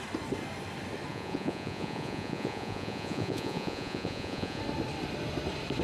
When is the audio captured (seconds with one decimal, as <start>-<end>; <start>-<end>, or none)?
0.0-1.1; 4.6-5.8